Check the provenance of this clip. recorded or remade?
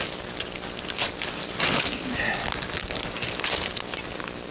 recorded